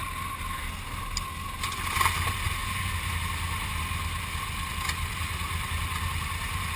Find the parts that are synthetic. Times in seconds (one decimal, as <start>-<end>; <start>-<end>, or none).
none